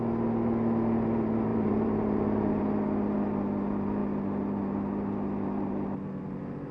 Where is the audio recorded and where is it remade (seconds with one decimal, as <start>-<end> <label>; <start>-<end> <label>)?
0.0-1.5 recorded; 1.5-2.6 remade; 2.6-6.7 recorded